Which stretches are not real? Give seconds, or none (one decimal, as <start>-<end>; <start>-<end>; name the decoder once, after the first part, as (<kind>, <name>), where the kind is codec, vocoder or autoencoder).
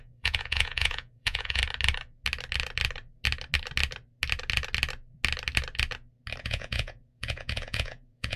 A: 0.0-1.6 (vocoder, Vocos); 6.4-8.4